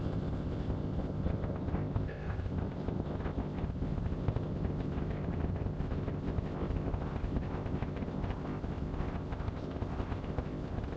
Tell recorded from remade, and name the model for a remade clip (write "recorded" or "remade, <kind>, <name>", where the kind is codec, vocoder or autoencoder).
remade, codec, ZipCodec